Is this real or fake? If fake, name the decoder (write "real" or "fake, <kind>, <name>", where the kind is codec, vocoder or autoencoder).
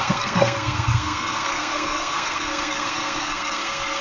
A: fake, codec, SNAC